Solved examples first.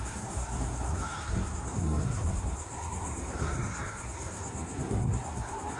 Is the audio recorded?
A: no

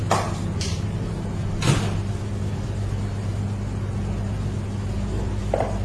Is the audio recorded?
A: yes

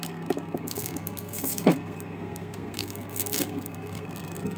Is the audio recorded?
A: no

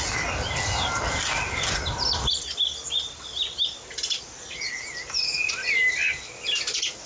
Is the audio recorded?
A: yes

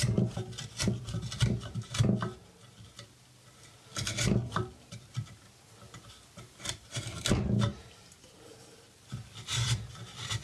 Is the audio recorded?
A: yes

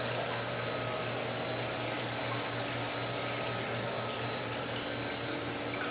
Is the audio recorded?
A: yes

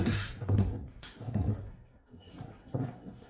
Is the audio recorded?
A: no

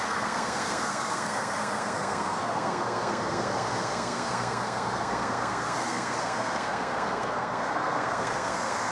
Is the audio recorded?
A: no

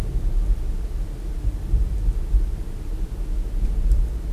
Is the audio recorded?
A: yes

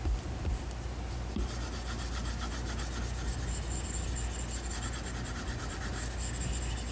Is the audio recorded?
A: yes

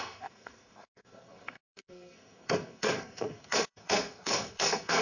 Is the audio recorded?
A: no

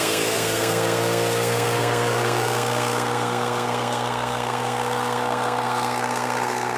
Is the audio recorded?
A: no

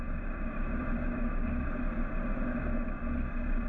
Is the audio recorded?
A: yes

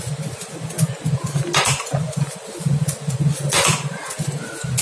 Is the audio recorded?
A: yes